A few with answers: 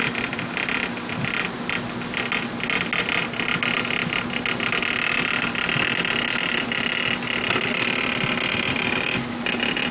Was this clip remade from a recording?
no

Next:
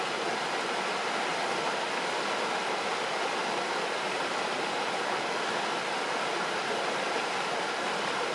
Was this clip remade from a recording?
no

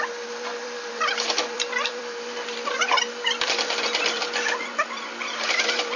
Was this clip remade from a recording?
yes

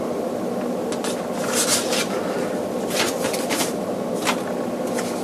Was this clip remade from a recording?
no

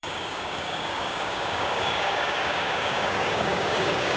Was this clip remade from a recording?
yes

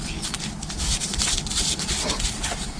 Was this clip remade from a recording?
no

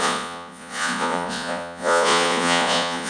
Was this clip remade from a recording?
yes